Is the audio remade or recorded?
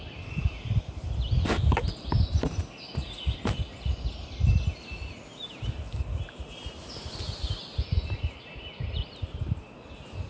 recorded